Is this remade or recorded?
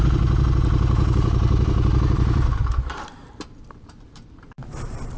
remade